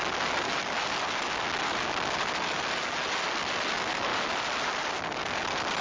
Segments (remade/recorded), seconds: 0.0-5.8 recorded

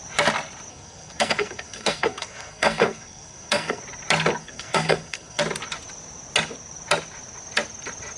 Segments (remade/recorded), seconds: 0.0-0.7 recorded; 0.7-3.8 remade; 3.8-4.4 recorded; 4.4-5.4 remade; 5.4-8.2 recorded

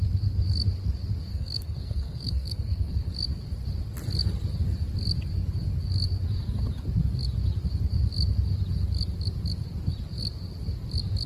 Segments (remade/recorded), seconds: 0.0-1.3 recorded; 1.3-3.1 remade; 3.1-11.3 recorded

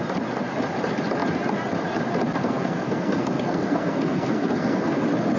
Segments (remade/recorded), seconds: 0.0-2.4 recorded; 2.4-5.0 remade; 5.0-5.4 recorded

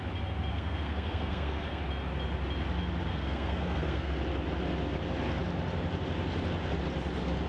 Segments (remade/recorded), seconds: 0.0-0.5 recorded; 0.5-1.8 remade; 1.8-3.1 recorded; 3.1-4.1 remade; 4.1-7.5 recorded

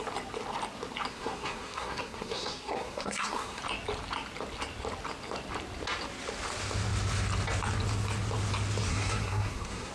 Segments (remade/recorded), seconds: 0.0-1.1 recorded; 1.1-3.6 remade; 3.6-8.9 recorded; 8.9-9.9 remade

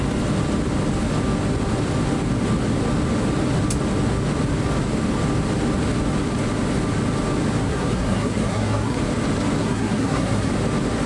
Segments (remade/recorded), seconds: 0.0-7.6 recorded; 7.6-9.0 remade; 9.0-9.6 recorded; 9.6-10.5 remade; 10.5-11.1 recorded